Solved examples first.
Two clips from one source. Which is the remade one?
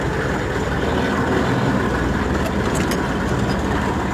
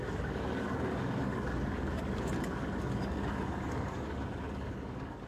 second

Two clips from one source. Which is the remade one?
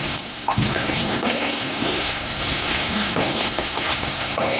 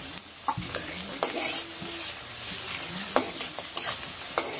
first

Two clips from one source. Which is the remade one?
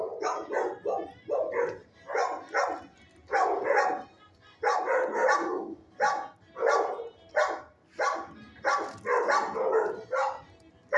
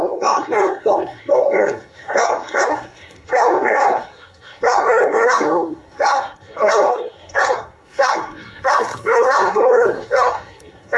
second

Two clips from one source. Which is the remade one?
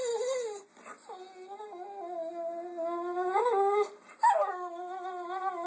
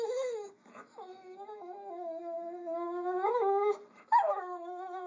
second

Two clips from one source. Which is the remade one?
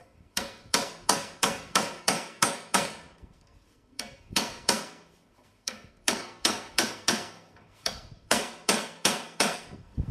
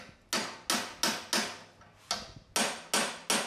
first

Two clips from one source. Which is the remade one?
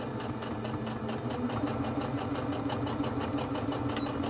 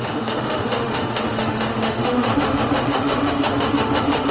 second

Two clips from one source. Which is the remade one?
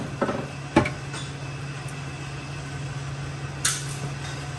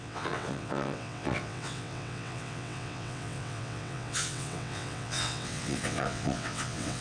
second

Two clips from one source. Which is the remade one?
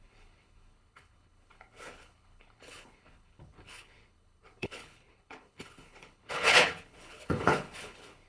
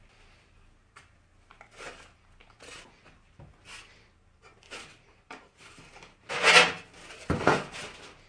first